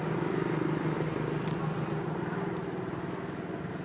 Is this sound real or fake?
real